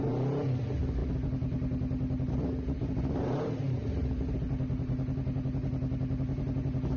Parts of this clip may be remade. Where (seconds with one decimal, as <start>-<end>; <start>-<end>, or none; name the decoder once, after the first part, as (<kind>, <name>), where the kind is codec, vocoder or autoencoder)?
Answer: none